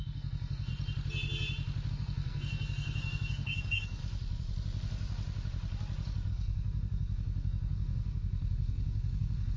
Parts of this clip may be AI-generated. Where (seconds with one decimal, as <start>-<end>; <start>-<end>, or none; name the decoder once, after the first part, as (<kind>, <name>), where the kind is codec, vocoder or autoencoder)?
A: 0.0-0.7 (codec, SNAC); 1.9-4.0; 6.3-9.6